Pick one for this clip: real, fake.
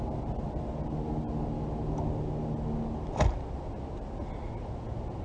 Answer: real